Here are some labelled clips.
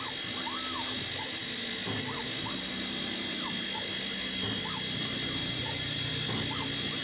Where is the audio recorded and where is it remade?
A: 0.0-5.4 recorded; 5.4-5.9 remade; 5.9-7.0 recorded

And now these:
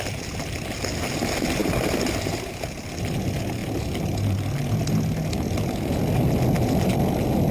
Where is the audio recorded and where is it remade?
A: 0.0-1.6 recorded; 1.6-2.3 remade; 2.3-7.5 recorded

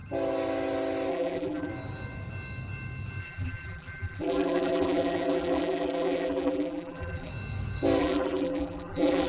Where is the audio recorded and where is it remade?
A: 0.0-1.1 recorded; 1.1-1.7 remade; 1.7-3.2 recorded; 3.2-7.3 remade; 7.3-8.0 recorded; 8.0-9.3 remade

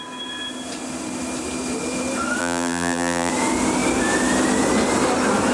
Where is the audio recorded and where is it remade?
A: 0.0-2.4 recorded; 2.4-3.3 remade; 3.3-5.5 recorded

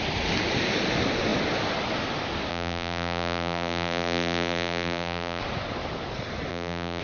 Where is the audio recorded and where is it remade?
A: 0.0-2.5 recorded; 2.5-5.4 remade; 5.4-6.5 recorded; 6.5-7.0 remade

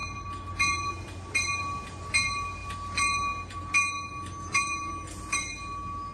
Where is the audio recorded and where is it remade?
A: 0.0-4.5 recorded; 4.5-5.5 remade; 5.5-6.1 recorded

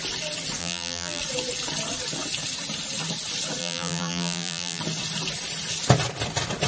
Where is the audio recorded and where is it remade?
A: 0.0-0.6 recorded; 0.6-1.2 remade; 1.2-3.6 recorded; 3.6-4.8 remade; 4.8-6.7 recorded

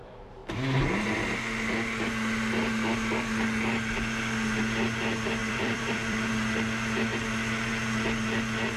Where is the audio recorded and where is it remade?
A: 0.0-5.4 recorded; 5.4-6.3 remade; 6.3-8.8 recorded